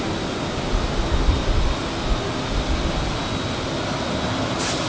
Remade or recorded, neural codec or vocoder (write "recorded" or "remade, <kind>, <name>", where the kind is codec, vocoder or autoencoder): recorded